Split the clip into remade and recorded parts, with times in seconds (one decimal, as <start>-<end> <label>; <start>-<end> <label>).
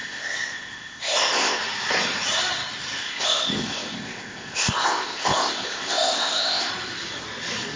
0.0-1.6 remade; 1.6-3.0 recorded; 3.0-6.7 remade; 6.7-7.8 recorded